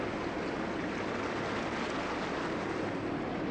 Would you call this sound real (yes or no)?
yes